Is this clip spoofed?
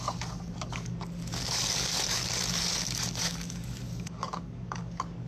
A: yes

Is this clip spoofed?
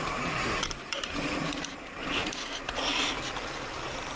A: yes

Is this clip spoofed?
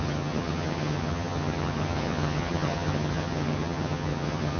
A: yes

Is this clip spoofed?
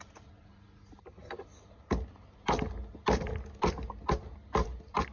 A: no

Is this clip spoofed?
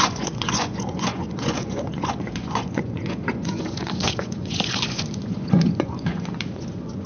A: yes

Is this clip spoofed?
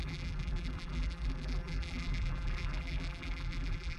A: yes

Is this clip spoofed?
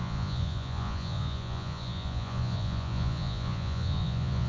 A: yes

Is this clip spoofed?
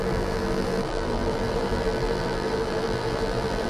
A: yes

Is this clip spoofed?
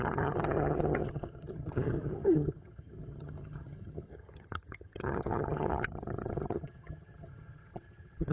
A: yes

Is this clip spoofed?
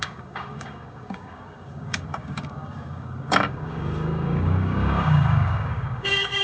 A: yes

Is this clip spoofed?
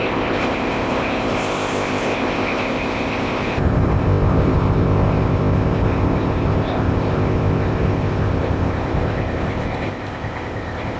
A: yes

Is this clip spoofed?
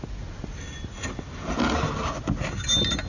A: no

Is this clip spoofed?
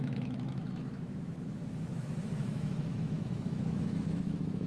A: yes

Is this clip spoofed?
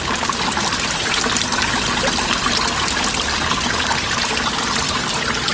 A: no